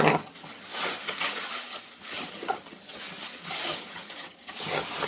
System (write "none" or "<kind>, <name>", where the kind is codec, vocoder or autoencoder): vocoder, HiFi-GAN